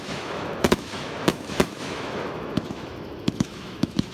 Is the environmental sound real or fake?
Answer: fake